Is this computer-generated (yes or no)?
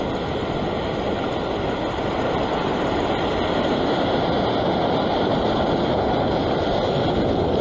no